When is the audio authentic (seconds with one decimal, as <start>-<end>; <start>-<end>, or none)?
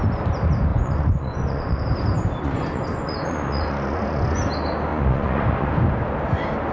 0.0-0.7; 1.8-2.4; 4.4-4.9; 5.7-6.7